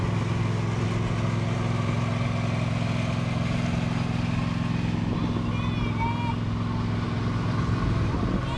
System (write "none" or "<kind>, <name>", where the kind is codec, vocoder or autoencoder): none